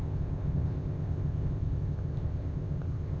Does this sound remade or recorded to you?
remade